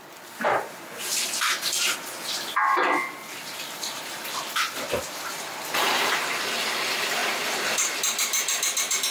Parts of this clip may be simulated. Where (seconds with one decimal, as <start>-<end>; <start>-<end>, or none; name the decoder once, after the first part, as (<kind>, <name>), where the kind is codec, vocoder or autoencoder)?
0.0-1.1 (vocoder, BigVGAN v2); 5.0-9.1